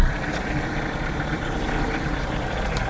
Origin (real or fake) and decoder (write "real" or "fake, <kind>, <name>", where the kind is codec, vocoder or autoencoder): fake, vocoder, BigVGAN v2